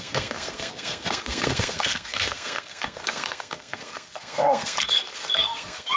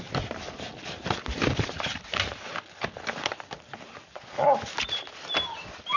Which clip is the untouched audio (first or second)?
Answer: second